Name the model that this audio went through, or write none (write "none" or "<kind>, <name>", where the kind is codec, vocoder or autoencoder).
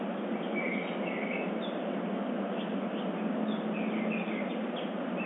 none